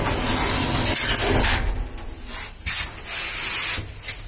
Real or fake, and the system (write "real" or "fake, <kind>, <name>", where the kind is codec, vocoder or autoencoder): real